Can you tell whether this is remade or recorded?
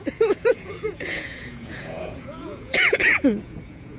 remade